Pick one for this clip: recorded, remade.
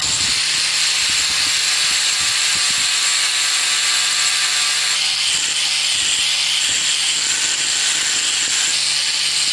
recorded